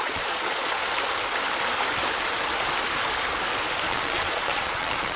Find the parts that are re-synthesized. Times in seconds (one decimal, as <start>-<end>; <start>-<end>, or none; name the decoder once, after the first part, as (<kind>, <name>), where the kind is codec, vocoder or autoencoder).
0.0-0.8 (vocoder, Vocos); 3.9-5.2